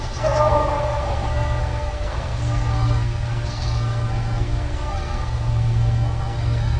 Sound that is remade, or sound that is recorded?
remade